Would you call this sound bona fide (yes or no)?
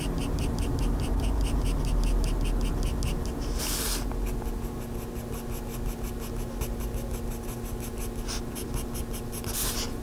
yes